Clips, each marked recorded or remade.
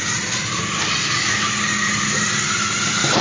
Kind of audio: recorded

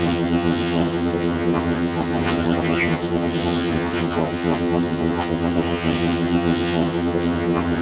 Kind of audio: remade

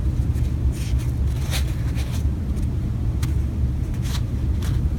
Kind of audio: recorded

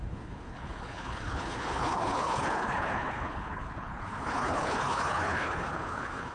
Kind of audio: remade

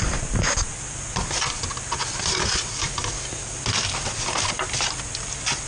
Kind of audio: remade